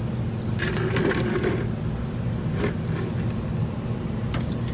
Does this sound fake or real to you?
real